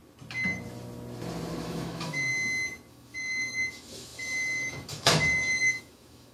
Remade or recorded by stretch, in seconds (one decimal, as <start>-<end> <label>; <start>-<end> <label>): 0.0-1.6 recorded; 1.6-2.3 remade; 2.3-2.9 recorded; 2.9-6.3 remade